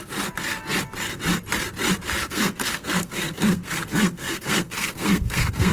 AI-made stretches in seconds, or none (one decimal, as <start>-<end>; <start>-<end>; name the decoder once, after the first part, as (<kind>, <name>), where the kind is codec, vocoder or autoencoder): 2.2-5.7 (codec, SNAC)